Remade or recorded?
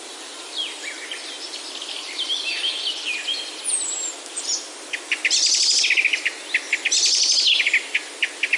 recorded